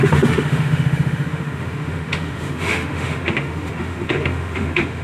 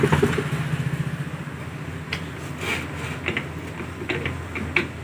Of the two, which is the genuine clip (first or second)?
second